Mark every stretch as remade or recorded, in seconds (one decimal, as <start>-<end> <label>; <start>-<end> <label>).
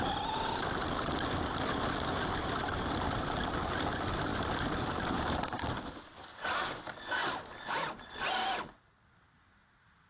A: 0.0-10.1 recorded